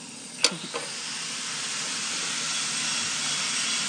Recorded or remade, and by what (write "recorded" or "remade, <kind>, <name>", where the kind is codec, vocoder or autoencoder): recorded